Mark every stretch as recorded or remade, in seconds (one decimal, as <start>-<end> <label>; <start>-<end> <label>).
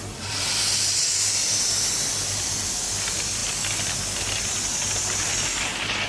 0.0-6.1 recorded